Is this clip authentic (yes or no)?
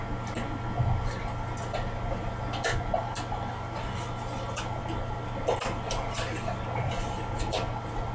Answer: yes